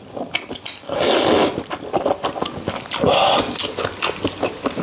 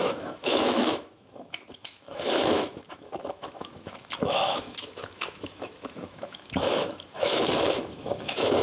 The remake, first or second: second